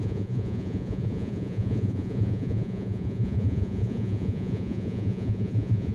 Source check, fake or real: fake